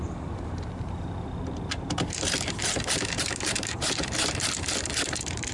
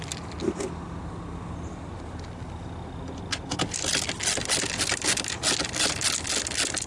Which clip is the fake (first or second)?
first